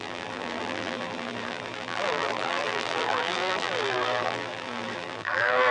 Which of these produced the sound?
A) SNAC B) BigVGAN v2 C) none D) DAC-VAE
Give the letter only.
B